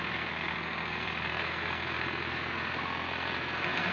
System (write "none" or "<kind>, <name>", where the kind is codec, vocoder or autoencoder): codec, SNAC